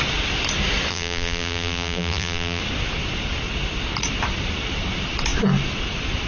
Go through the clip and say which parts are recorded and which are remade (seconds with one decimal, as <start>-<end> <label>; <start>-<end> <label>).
0.0-0.9 recorded; 0.9-2.6 remade; 2.6-6.3 recorded